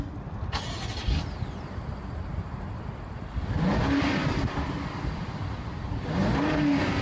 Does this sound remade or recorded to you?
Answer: recorded